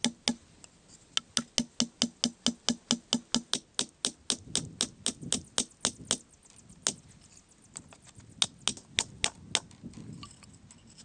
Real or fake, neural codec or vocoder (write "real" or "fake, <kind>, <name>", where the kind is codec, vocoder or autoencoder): real